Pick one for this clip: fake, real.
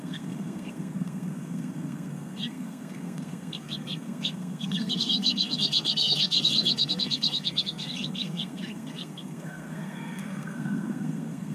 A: fake